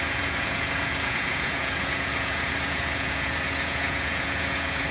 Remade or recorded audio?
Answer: remade